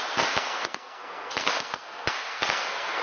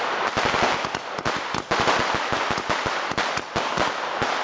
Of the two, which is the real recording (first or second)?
second